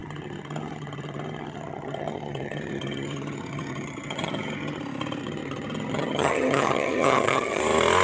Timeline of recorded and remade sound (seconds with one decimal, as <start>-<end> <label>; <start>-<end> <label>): 0.0-4.8 remade; 4.8-5.2 recorded; 5.2-7.6 remade; 7.6-8.0 recorded